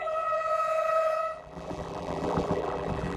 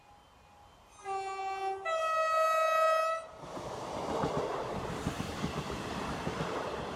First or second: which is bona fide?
second